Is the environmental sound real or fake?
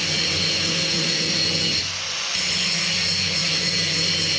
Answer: fake